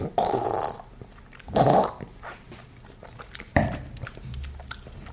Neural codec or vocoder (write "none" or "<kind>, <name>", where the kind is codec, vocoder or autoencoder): vocoder, BigVGAN v2